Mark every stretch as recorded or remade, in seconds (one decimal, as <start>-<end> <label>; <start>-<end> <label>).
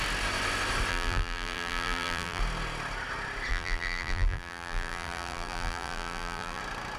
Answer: 0.0-0.9 recorded; 0.9-2.4 remade; 2.4-3.5 recorded; 3.5-6.6 remade; 6.6-7.0 recorded